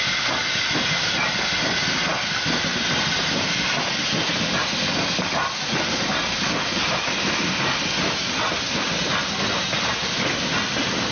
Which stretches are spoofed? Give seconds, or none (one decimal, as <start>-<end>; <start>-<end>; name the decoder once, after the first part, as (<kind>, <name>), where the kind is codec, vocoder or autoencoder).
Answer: 2.7-3.9 (vocoder, BigVGAN v2)